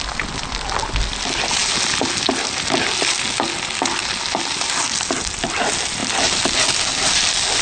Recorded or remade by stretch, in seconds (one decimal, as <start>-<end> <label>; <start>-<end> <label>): 0.0-7.6 recorded